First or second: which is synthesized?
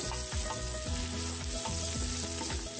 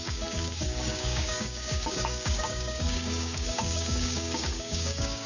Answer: second